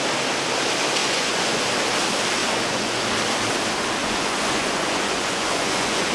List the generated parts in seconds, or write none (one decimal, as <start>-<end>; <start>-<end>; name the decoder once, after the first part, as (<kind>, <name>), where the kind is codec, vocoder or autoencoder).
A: 1.0-1.6 (vocoder, Vocos); 2.4-3.0; 4.0-6.1